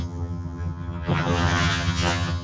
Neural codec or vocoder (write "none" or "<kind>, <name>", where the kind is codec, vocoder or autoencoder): vocoder, HiFi-GAN